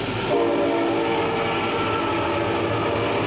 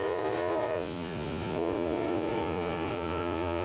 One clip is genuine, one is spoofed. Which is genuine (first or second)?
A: first